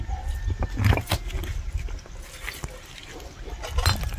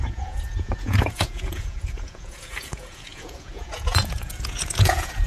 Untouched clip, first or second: first